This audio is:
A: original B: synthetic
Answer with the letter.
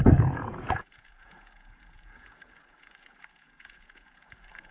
B